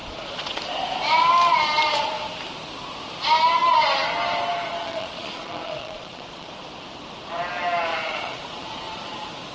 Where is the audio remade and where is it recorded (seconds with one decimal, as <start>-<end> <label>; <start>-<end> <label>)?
0.0-0.6 remade; 0.6-4.8 recorded; 4.8-6.5 remade; 6.5-7.9 recorded; 7.9-9.1 remade; 9.1-9.5 recorded

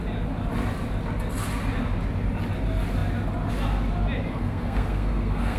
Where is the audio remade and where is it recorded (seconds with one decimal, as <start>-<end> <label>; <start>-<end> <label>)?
0.0-4.3 recorded; 4.3-5.6 remade

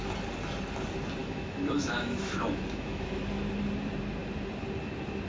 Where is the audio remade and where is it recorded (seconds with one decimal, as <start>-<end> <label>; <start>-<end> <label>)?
0.0-1.2 recorded; 1.2-3.1 remade; 3.1-5.3 recorded

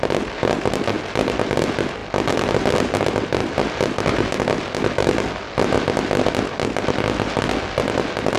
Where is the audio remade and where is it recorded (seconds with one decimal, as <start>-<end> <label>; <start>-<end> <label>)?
0.0-8.4 recorded

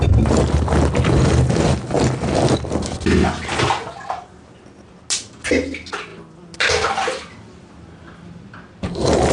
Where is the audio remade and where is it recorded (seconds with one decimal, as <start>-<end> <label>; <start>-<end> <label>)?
0.0-9.3 recorded